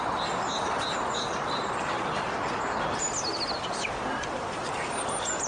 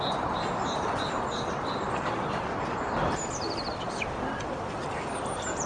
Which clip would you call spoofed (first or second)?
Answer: second